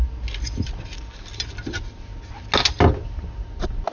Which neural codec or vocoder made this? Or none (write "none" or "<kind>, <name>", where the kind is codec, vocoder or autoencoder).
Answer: none